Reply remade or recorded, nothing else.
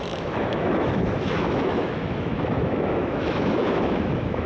remade